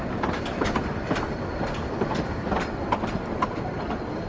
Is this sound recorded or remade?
recorded